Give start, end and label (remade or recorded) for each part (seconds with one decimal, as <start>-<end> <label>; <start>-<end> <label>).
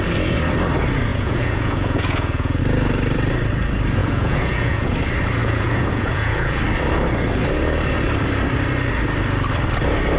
0.0-1.1 recorded; 1.1-2.6 remade; 2.6-4.0 recorded; 4.0-4.9 remade; 4.9-5.4 recorded; 5.4-6.6 remade; 6.6-10.2 recorded